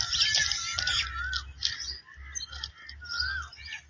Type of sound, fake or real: real